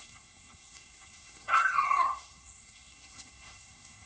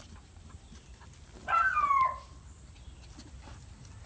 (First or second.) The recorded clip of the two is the second